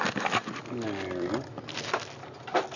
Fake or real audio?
real